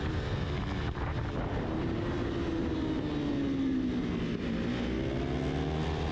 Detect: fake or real real